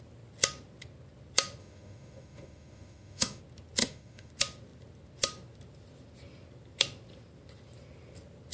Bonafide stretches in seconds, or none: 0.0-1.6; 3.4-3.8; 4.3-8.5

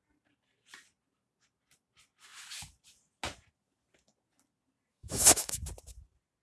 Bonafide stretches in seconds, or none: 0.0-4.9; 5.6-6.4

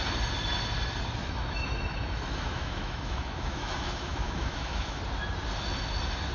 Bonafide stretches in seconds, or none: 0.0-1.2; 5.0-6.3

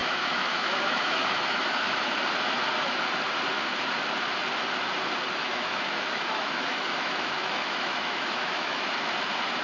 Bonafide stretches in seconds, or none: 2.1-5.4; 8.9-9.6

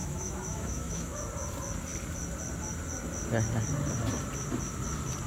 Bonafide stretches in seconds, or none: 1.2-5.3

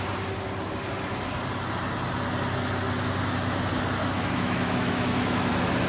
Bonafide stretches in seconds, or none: 0.0-4.0; 5.5-5.9